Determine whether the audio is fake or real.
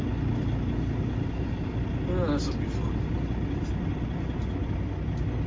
real